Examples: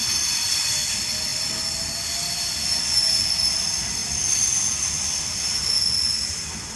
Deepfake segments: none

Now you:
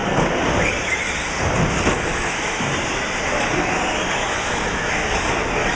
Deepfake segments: 2.1-2.7 (autoencoder, DAC-VAE); 4.2-4.9

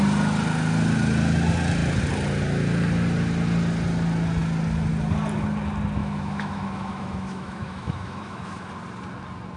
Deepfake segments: 6.0-8.7 (autoencoder, DAC-VAE)

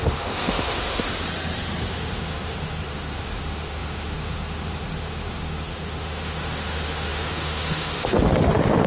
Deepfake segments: 0.0-1.1 (autoencoder, DAC-VAE); 1.9-8.9

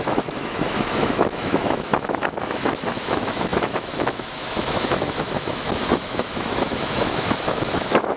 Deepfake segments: 0.0-8.2 (autoencoder, DAC-VAE)

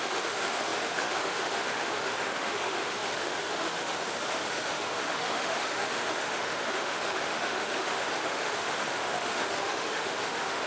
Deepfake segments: 0.0-10.7 (autoencoder, DAC-VAE)

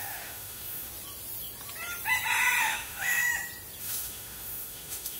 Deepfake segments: 0.0-0.9 (autoencoder, DAC-VAE); 2.6-3.3; 3.8-5.2